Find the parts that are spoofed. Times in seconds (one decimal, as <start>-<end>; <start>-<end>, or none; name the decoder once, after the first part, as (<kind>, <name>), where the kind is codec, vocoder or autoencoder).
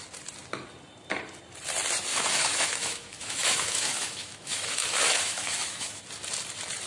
2.1-6.0 (autoencoder, DAC-VAE)